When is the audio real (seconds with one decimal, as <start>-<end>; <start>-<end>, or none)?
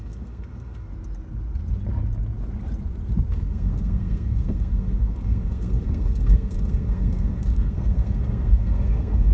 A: 0.9-3.3